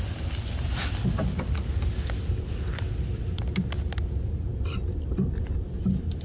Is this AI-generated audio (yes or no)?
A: no